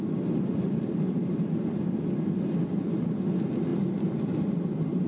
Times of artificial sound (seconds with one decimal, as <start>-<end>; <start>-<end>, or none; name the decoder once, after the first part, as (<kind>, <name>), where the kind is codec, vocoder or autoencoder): 1.2-1.8 (vocoder, BigVGAN v2)